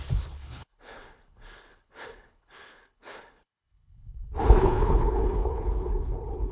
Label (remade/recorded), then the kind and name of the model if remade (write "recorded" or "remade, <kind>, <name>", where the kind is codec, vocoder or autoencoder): remade, codec, HILCodec